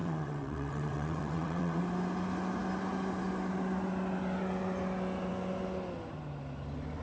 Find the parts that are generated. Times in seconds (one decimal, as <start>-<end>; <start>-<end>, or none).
0.0-1.8